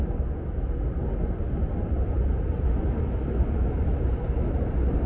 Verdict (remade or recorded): recorded